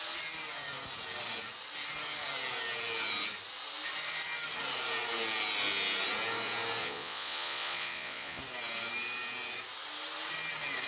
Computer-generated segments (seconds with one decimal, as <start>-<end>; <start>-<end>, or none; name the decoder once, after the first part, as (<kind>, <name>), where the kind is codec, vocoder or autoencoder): 6.8-8.4 (vocoder, Vocos)